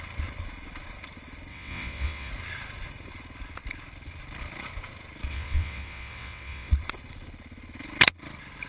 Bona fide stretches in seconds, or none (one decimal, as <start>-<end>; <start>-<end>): 0.0-1.5; 2.3-5.3; 6.7-8.7